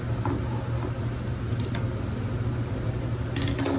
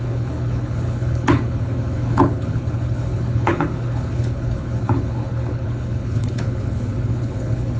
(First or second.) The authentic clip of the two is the first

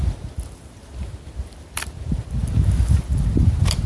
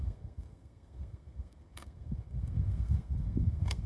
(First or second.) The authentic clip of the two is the first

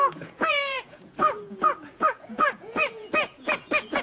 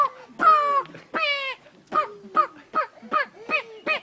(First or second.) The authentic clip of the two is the second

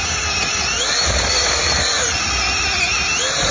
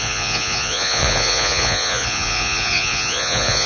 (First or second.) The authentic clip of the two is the first